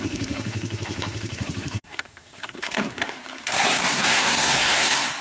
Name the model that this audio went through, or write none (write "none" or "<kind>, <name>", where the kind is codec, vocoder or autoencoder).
codec, SNAC